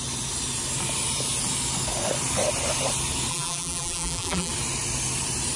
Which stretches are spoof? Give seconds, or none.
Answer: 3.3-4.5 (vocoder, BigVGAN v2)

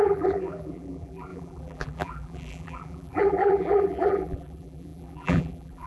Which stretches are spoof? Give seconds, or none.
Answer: 0.0-5.9 (vocoder, BigVGAN v2)